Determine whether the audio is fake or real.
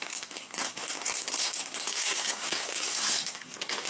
fake